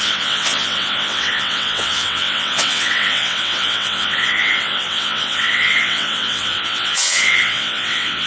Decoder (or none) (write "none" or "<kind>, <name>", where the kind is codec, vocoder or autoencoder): vocoder, WaveNeXt